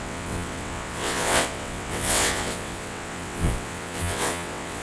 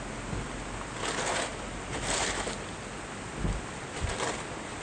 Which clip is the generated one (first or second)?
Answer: first